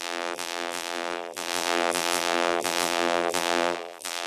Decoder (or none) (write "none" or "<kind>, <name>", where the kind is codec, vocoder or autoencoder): vocoder, BigVGAN v2